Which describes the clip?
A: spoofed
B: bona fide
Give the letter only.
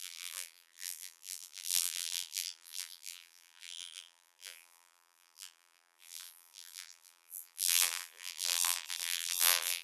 A